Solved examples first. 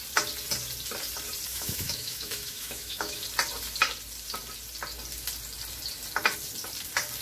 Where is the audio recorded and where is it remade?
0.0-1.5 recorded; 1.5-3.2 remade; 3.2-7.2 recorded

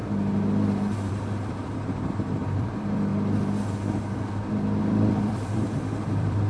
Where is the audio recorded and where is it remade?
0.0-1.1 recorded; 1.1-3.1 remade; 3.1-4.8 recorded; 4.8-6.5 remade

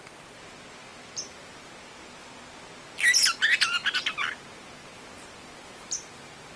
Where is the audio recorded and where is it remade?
0.0-6.6 recorded

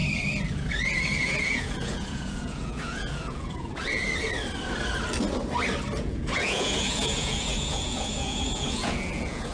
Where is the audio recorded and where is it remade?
0.0-1.2 recorded; 1.2-4.0 remade; 4.0-6.0 recorded; 6.0-9.5 remade

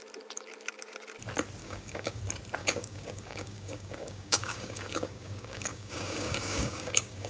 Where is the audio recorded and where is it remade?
0.0-1.6 recorded; 1.6-2.2 remade; 2.2-2.6 recorded; 2.6-7.3 remade

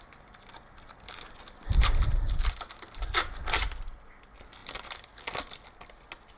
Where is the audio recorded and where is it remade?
0.0-6.4 recorded